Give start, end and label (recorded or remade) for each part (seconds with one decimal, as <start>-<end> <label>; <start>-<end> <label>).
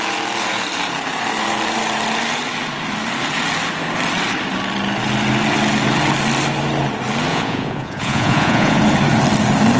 0.0-7.3 recorded; 7.3-8.8 remade; 8.8-9.8 recorded